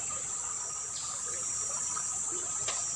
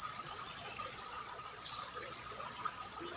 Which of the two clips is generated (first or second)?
second